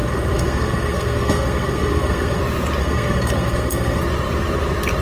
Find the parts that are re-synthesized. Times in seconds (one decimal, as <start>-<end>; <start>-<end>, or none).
0.0-2.4; 2.8-4.0